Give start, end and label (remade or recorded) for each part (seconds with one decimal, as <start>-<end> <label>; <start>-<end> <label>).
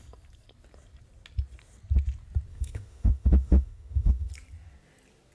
0.0-2.5 recorded; 2.5-4.3 remade; 4.3-5.3 recorded